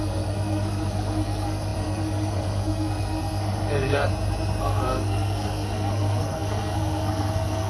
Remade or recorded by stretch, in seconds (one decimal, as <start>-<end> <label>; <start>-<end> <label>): 0.0-4.1 remade; 4.1-4.6 recorded; 4.6-7.7 remade